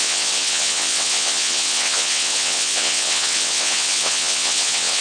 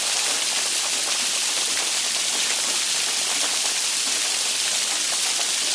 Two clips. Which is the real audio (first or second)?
second